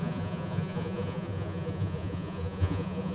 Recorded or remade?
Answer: remade